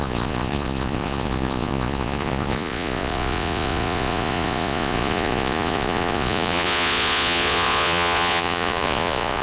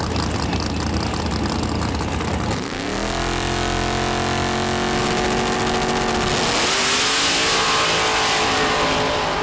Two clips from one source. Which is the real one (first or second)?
second